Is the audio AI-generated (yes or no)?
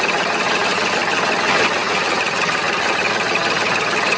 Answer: no